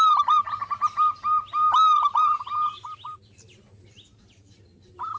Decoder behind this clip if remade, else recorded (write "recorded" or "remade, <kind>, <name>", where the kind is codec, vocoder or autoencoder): recorded